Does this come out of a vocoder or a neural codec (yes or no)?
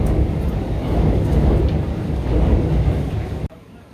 yes